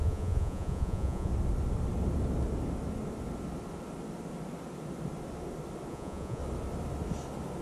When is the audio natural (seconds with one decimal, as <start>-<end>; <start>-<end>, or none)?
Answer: 1.3-5.9; 6.4-7.6